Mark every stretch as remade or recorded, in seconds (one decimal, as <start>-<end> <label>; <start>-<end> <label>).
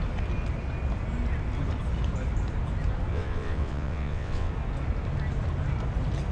0.0-3.1 recorded; 3.1-4.5 remade; 4.5-6.3 recorded